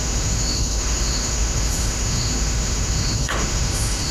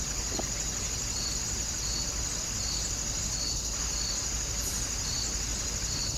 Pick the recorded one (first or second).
second